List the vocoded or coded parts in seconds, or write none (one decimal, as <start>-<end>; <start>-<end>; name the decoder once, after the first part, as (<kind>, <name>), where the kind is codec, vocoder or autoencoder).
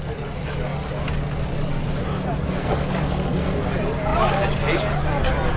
2.6-3.6 (codec, SNAC)